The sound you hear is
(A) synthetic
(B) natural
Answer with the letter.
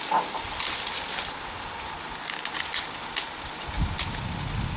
B